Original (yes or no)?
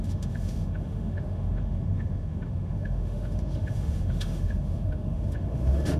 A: no